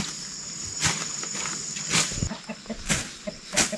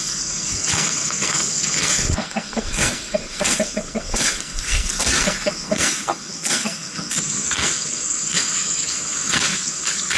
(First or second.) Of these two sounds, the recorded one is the first